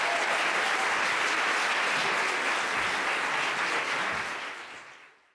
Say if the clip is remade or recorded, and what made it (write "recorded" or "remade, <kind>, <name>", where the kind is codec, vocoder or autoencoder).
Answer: recorded